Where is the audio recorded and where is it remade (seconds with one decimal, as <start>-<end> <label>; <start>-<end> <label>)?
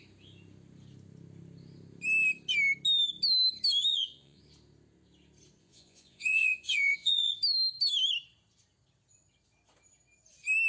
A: 0.0-3.9 recorded; 3.9-4.4 remade; 4.4-5.6 recorded; 5.6-7.4 remade; 7.4-10.7 recorded